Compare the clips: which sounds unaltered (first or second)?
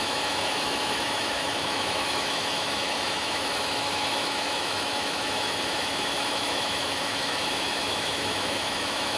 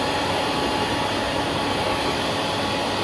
second